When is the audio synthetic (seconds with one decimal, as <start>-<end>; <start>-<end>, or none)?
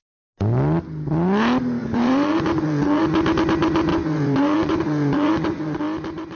1.8-3.0; 3.9-5.8